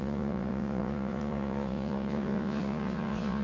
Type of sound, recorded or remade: remade